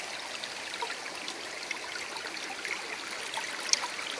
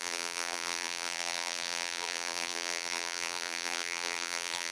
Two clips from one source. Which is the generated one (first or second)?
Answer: second